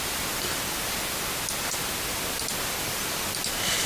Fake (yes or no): no